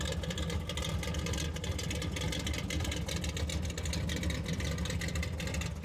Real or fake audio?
real